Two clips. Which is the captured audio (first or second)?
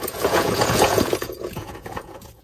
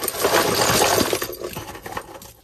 second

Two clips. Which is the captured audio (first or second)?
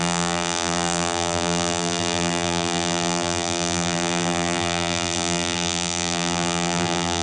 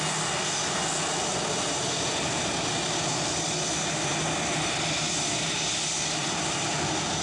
second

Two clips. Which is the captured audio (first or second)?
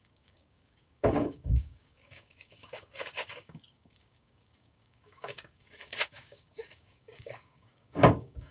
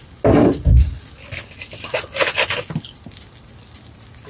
second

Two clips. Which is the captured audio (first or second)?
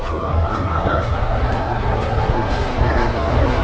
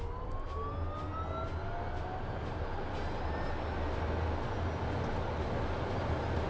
second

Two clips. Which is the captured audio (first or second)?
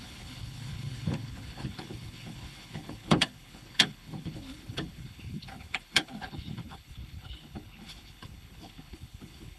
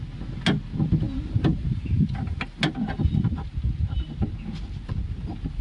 second